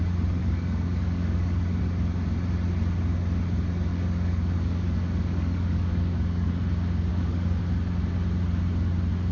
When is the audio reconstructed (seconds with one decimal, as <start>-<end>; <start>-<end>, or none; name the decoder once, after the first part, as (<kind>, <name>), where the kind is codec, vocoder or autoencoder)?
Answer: 0.4-1.8 (codec, DAC); 3.9-6.5; 7.1-7.6